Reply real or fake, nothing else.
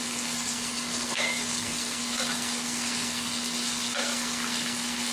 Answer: fake